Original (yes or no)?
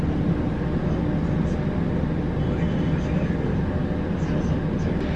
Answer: yes